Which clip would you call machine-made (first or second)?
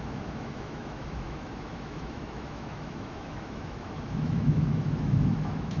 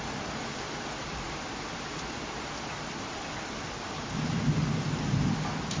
first